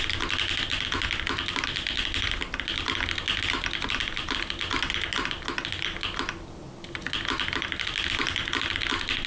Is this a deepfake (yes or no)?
no